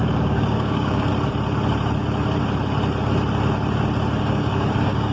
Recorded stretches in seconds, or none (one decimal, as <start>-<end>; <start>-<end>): 1.1-4.2